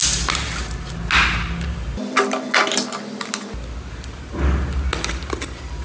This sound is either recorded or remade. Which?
recorded